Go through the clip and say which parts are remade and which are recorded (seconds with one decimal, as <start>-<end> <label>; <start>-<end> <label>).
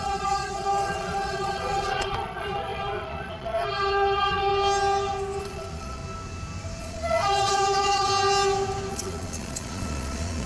0.0-4.5 remade; 4.5-5.4 recorded; 5.4-6.0 remade; 6.0-6.8 recorded; 6.8-8.1 remade; 8.1-8.9 recorded; 8.9-10.5 remade